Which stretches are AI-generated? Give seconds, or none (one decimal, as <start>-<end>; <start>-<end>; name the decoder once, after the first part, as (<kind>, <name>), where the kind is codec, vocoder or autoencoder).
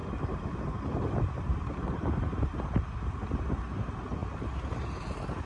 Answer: 0.0-3.3 (vocoder, BigVGAN v2)